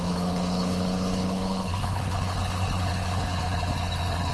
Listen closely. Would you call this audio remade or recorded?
remade